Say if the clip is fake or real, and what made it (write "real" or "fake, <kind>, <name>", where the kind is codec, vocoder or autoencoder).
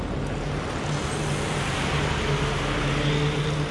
real